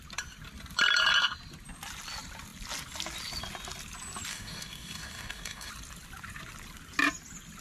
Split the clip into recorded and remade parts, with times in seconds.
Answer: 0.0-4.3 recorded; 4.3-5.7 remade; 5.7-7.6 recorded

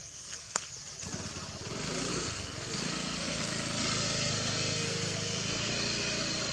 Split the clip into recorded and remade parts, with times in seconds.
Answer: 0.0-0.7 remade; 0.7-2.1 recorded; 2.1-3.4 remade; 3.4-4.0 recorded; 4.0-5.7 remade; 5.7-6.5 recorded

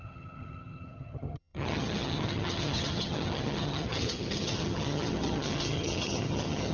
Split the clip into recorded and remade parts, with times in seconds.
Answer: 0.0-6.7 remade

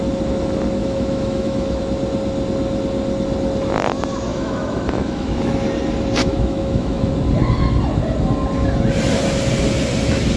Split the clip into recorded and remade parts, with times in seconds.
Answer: 0.0-0.8 recorded; 0.8-1.8 remade; 1.8-4.3 recorded; 4.3-5.5 remade; 5.5-6.2 recorded; 6.2-7.1 remade; 7.1-10.4 recorded

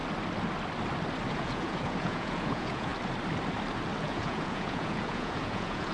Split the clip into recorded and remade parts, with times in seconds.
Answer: 0.0-1.3 recorded; 1.3-2.9 remade; 2.9-4.0 recorded; 4.0-5.9 remade

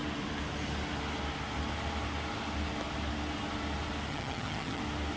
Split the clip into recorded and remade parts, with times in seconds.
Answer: 0.0-4.1 recorded; 4.1-4.8 remade; 4.8-5.2 recorded

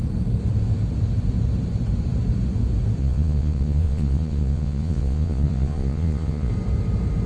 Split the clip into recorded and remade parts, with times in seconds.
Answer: 0.0-3.0 recorded; 3.0-6.5 remade; 6.5-7.3 recorded